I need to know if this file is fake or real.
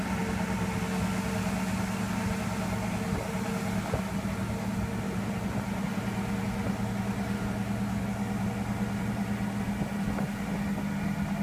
real